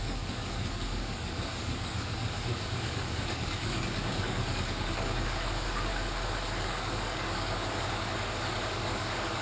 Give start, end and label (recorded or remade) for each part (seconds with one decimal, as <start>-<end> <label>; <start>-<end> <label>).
0.0-5.9 remade; 5.9-6.6 recorded; 6.6-9.4 remade